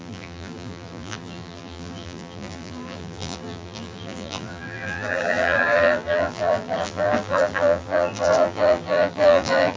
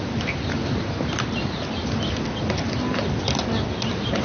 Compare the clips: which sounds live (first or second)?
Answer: second